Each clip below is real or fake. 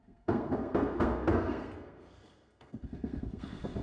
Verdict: fake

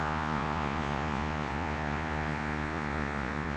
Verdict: fake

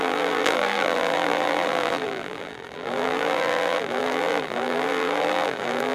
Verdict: fake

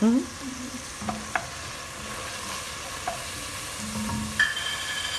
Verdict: real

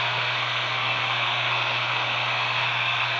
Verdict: fake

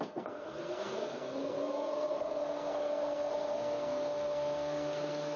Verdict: fake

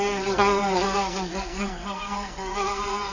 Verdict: fake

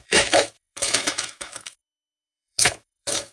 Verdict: fake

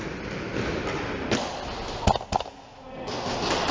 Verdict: real